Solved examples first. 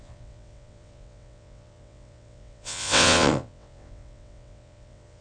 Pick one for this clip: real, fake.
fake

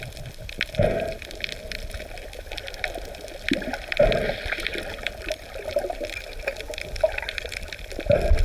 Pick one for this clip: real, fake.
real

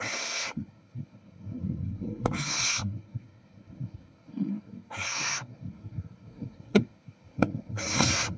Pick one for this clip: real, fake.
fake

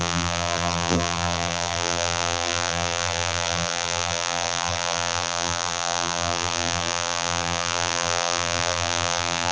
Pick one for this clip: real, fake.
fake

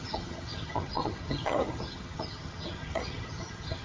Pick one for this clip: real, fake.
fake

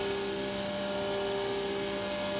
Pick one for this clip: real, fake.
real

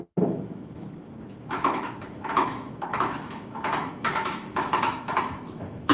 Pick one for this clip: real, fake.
fake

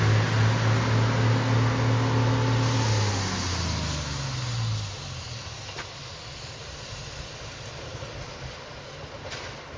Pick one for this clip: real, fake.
real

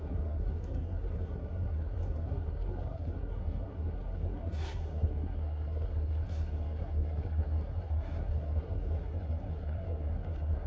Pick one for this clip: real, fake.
fake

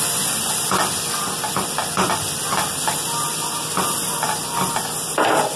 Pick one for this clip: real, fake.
real